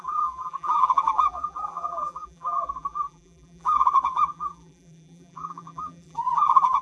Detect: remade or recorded remade